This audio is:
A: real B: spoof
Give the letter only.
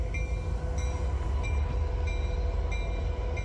A